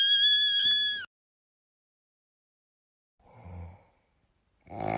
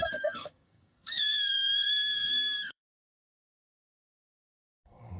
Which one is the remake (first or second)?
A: second